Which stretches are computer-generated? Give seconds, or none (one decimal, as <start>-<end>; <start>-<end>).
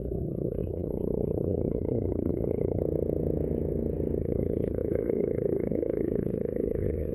0.0-2.8; 4.2-7.1